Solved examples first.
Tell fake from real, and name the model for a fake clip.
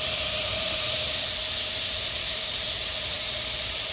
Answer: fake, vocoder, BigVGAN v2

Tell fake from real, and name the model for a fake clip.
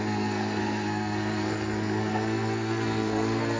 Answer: fake, codec, SNAC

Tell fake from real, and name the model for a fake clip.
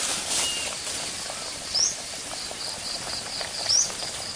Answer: real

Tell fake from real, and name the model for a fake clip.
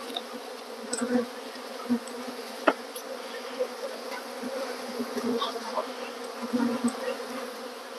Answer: fake, vocoder, Vocos